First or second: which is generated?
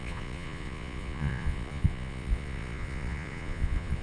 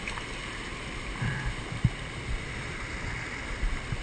first